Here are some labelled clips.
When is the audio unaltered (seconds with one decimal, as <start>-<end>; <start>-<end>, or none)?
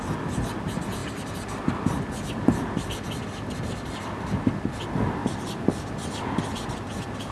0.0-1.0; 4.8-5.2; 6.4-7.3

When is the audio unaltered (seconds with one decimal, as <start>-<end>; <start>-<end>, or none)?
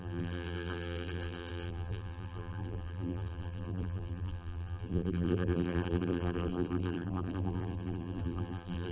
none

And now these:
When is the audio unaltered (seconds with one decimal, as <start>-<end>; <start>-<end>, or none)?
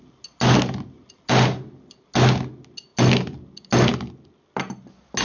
0.0-5.2